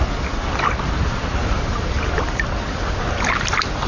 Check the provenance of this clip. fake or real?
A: real